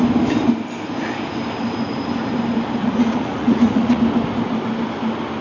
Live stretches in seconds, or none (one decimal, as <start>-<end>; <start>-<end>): 0.0-2.8; 4.0-5.4